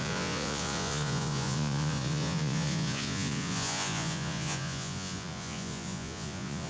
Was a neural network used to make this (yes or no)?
yes